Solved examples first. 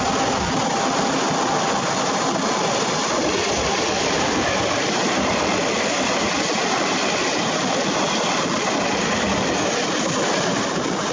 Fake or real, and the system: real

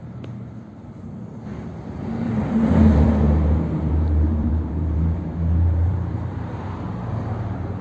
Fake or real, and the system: fake, vocoder, BigVGAN v2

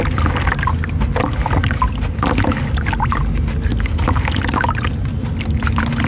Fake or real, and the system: real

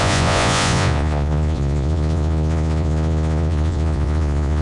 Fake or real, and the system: fake, vocoder, Vocos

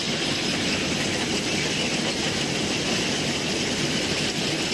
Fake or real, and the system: real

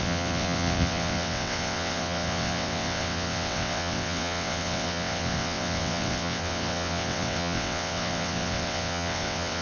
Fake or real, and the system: fake, vocoder, WaveNeXt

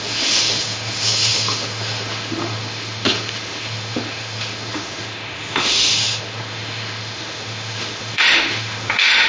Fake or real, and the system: fake, autoencoder, DAC-VAE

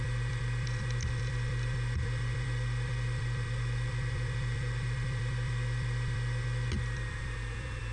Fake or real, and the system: fake, vocoder, BigVGAN v2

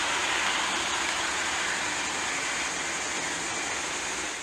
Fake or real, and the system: real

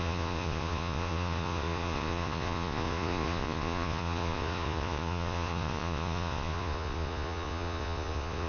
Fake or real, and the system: fake, vocoder, Vocos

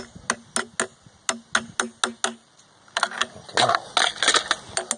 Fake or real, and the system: real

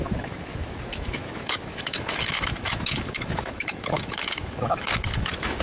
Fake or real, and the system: fake, autoencoder, DAC-VAE